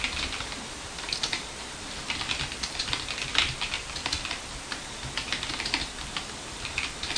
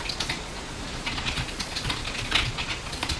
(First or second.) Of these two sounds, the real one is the first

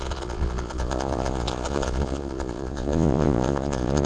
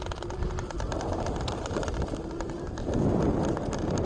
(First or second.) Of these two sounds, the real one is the second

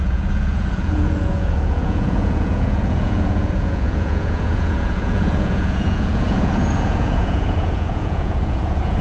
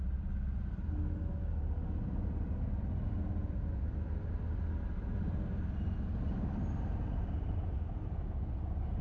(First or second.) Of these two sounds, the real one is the second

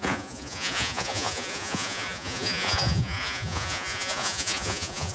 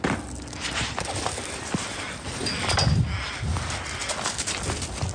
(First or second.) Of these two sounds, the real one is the second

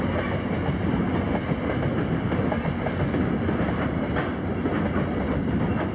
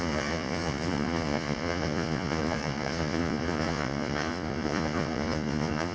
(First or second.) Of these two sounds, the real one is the first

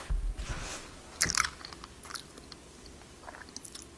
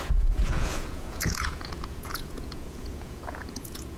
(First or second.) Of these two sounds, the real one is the first